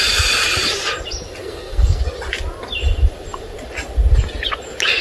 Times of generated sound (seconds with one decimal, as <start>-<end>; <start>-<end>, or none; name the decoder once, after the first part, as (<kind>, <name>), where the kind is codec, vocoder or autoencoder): 1.4-2.0 (codec, SNAC)